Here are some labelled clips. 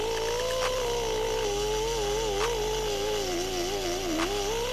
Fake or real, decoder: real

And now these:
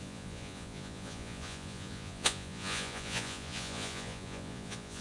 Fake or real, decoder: fake, vocoder, Vocos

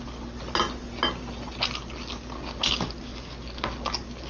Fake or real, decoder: real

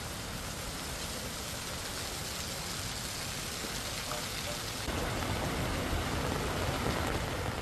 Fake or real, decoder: real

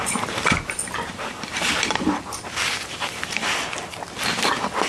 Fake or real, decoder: real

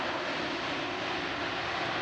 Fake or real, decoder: real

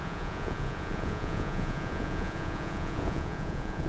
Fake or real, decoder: fake, vocoder, Vocos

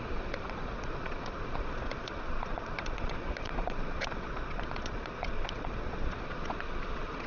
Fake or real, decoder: fake, vocoder, Vocos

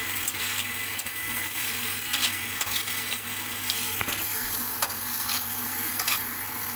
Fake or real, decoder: fake, codec, SNAC